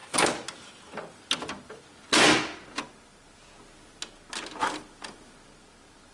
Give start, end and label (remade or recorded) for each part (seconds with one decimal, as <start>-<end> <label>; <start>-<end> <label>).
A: 0.0-6.1 recorded